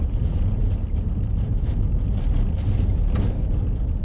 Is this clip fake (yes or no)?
no